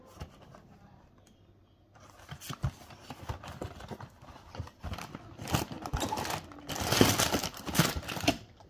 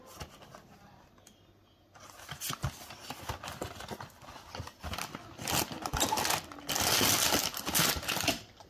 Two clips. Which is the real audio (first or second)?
second